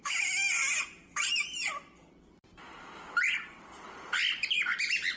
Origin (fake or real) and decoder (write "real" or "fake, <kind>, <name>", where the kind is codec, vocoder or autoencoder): fake, vocoder, BigVGAN v2